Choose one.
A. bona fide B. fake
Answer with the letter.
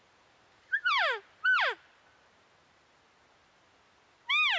A